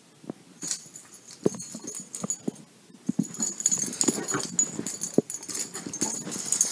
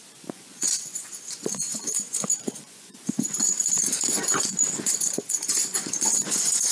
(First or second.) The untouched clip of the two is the first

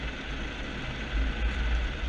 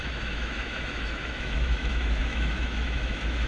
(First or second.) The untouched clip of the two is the first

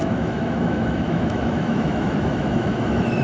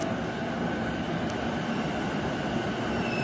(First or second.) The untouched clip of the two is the second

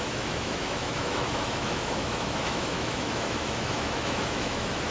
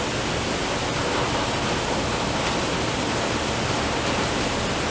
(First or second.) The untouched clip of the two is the second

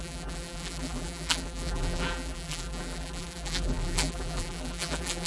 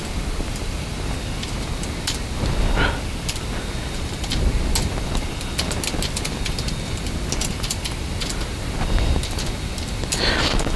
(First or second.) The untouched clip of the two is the second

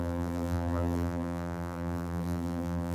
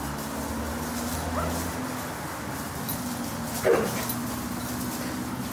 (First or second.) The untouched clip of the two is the second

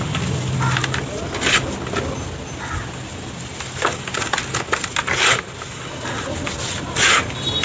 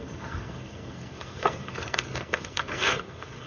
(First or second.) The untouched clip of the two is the first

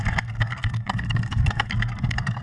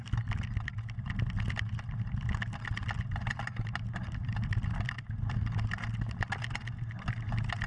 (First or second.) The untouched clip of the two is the second